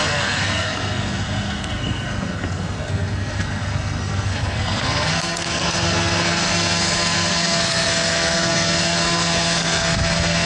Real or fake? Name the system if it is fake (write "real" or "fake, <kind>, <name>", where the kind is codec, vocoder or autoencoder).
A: fake, codec, SNAC